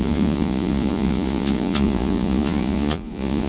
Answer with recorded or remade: remade